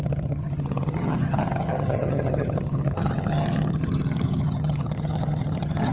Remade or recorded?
remade